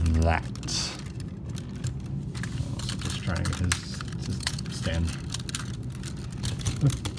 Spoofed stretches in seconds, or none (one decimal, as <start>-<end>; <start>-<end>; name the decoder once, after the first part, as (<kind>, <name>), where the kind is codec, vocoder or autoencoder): 4.2-4.9 (vocoder, Vocos)